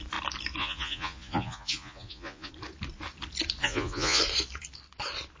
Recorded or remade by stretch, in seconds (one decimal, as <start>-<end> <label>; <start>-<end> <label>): 0.0-0.6 recorded; 0.6-2.5 remade; 2.5-3.6 recorded; 3.6-4.2 remade; 4.2-5.4 recorded

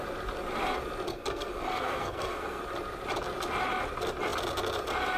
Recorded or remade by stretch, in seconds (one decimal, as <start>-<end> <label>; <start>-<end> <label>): 0.0-1.1 recorded; 1.1-2.6 remade; 2.6-5.2 recorded

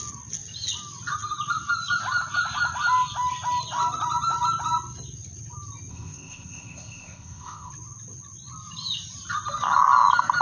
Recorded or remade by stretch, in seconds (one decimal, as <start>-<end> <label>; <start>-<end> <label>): 0.0-5.9 recorded; 5.9-7.7 remade; 7.7-10.4 recorded

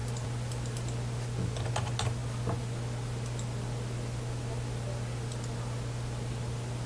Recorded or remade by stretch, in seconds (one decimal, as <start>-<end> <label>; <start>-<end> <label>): 0.0-6.9 recorded

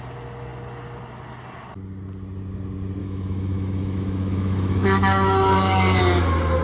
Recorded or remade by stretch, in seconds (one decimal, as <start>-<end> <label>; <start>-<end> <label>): 0.0-3.0 recorded; 3.0-6.0 remade; 6.0-6.6 recorded

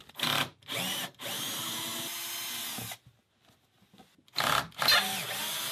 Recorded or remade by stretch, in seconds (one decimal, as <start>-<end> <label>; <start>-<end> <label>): 0.0-5.7 recorded